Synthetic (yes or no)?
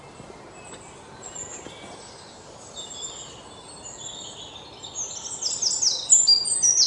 no